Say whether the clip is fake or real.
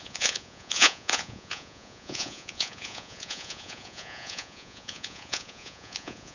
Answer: fake